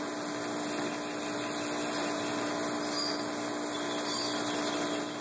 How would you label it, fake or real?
real